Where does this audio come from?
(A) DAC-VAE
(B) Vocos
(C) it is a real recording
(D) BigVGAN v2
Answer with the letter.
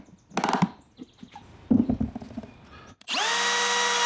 C